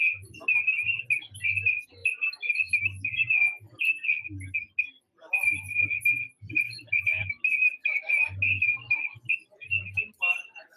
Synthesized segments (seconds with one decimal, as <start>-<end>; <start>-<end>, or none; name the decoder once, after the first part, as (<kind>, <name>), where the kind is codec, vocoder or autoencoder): none